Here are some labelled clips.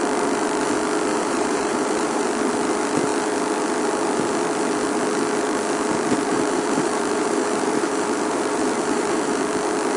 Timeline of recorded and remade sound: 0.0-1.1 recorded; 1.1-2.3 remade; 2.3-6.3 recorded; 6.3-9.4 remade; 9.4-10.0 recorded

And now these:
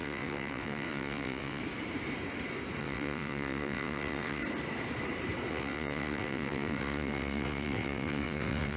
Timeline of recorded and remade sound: 0.0-1.6 remade; 1.6-2.8 recorded; 2.8-4.4 remade; 4.4-5.5 recorded; 5.5-8.8 remade